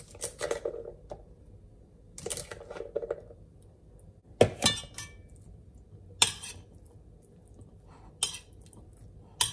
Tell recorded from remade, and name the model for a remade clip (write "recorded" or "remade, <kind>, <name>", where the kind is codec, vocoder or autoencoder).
recorded